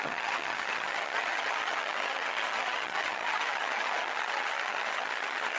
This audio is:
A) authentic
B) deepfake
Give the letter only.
B